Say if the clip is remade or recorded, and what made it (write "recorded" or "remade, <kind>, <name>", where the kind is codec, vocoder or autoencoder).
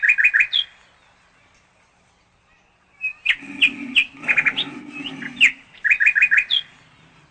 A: recorded